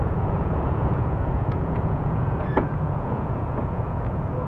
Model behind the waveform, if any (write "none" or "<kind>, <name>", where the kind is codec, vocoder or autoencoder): vocoder, Vocos